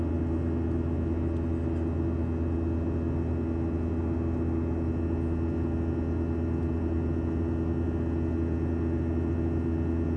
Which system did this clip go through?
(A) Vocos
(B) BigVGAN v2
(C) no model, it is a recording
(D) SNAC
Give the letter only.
C